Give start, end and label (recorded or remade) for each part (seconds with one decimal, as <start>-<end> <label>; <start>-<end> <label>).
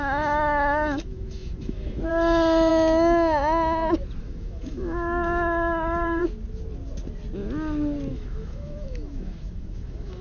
0.0-2.7 remade; 2.7-4.2 recorded; 4.2-6.2 remade; 6.2-8.1 recorded; 8.1-10.2 remade